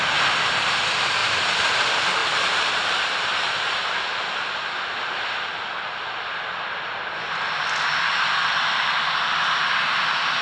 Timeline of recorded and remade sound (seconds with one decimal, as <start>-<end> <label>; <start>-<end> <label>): 0.0-1.2 recorded; 1.2-1.8 remade; 1.8-2.2 recorded; 2.2-3.9 remade; 3.9-10.4 recorded

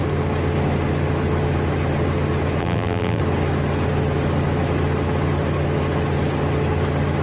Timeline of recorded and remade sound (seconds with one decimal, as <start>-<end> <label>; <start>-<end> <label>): 0.0-2.6 recorded; 2.6-3.2 remade; 3.2-7.2 recorded

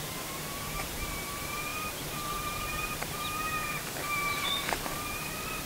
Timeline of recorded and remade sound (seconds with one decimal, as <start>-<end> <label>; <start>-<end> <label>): 0.0-5.7 remade

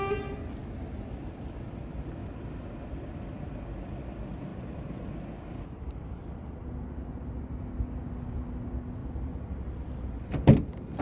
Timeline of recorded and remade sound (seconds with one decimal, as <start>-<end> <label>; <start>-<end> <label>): 0.0-4.5 recorded; 4.5-5.1 remade; 5.1-9.0 recorded; 9.0-11.0 remade